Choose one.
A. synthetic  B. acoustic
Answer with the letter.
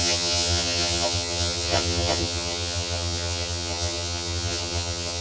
A